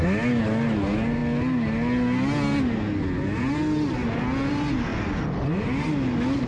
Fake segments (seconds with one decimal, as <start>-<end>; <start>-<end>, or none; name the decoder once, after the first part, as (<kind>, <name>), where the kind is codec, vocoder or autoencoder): none